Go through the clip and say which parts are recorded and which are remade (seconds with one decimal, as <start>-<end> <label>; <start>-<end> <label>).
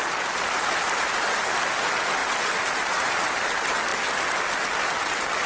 0.0-5.5 recorded